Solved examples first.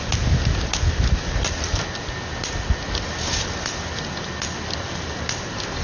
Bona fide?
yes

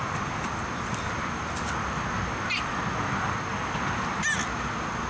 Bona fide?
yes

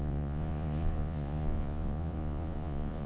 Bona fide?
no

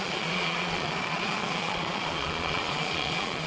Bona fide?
no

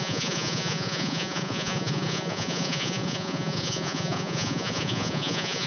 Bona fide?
no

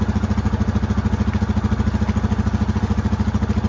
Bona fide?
yes